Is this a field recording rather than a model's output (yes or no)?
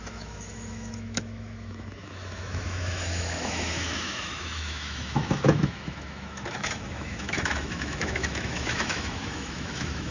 no